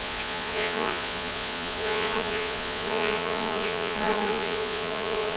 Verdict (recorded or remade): remade